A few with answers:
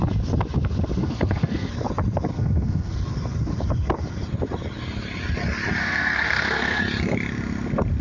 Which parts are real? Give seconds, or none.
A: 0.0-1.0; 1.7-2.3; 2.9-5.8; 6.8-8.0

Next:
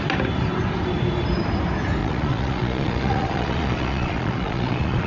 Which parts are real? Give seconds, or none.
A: 0.0-2.0

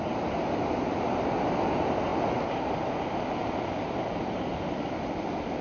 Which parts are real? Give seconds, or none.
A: 0.0-5.6